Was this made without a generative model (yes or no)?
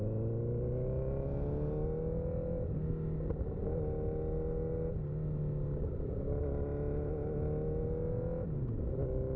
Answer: yes